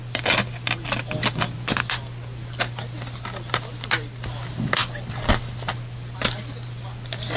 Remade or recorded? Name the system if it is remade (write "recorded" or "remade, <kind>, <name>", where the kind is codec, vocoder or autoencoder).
recorded